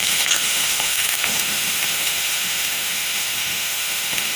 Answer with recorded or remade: remade